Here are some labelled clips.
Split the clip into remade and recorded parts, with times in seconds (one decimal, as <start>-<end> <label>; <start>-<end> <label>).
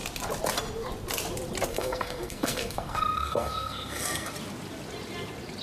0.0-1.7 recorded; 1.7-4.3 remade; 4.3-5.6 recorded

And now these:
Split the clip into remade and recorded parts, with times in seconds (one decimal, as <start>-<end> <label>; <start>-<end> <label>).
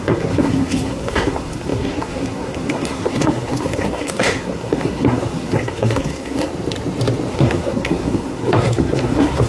0.0-6.5 remade; 6.5-7.3 recorded; 7.3-9.5 remade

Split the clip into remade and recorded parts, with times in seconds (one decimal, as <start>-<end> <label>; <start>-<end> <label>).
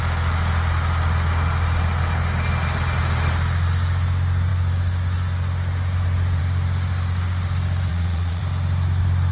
0.0-7.9 recorded; 7.9-8.4 remade; 8.4-9.3 recorded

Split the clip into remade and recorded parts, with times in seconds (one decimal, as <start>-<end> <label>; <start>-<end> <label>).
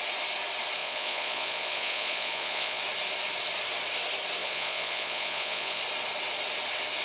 0.0-0.8 recorded; 0.8-2.8 remade; 2.8-4.4 recorded; 4.4-5.8 remade; 5.8-7.0 recorded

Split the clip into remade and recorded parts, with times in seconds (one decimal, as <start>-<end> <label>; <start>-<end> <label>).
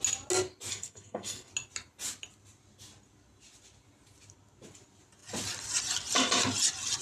0.0-0.7 recorded; 0.7-1.5 remade; 1.5-7.0 recorded